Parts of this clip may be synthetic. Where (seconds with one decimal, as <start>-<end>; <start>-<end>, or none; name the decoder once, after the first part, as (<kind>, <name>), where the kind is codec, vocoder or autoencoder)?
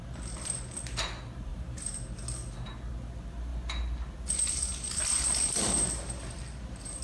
1.5-2.2 (vocoder, BigVGAN v2)